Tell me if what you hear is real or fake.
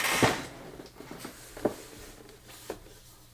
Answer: real